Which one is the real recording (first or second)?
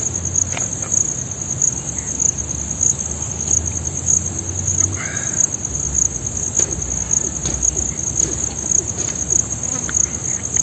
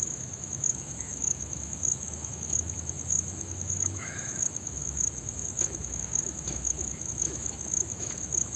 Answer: first